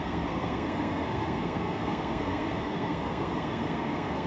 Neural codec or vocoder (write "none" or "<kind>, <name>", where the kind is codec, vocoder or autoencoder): codec, SNAC